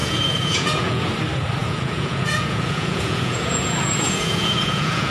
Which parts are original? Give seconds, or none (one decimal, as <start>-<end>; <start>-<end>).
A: 1.1-1.6